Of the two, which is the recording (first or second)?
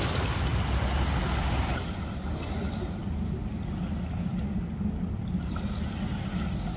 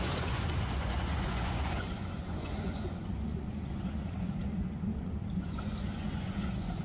first